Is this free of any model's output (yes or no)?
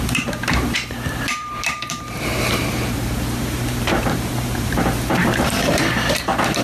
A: no